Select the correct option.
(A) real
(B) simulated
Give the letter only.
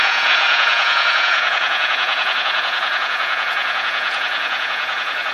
B